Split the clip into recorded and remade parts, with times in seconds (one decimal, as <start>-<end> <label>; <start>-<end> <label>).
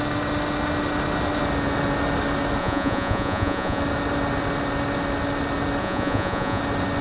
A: 0.0-2.6 recorded; 2.6-3.8 remade; 3.8-5.8 recorded; 5.8-6.6 remade; 6.6-7.0 recorded